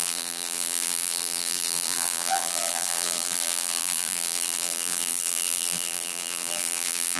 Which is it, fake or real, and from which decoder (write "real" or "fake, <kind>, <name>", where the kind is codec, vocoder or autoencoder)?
fake, vocoder, BigVGAN v2